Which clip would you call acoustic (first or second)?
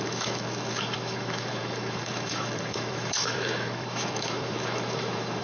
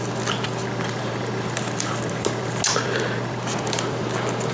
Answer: second